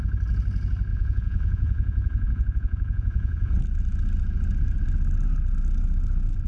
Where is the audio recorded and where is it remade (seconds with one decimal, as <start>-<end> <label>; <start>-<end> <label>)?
0.0-0.9 recorded; 0.9-3.5 remade; 3.5-6.5 recorded

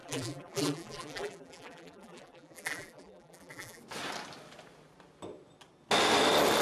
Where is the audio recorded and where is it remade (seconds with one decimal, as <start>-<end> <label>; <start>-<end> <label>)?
0.0-3.8 remade; 3.8-6.6 recorded